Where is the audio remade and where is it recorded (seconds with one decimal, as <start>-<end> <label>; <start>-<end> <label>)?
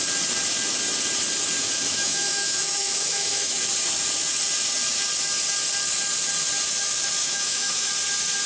0.0-1.6 recorded; 1.6-3.6 remade; 3.6-7.2 recorded; 7.2-7.9 remade; 7.9-8.5 recorded